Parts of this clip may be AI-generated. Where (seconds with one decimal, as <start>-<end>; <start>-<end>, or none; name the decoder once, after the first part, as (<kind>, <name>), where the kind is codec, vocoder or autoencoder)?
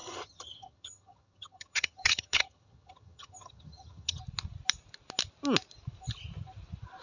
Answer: 0.0-4.2 (vocoder, HiFi-GAN)